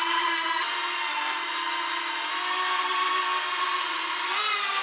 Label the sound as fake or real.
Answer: real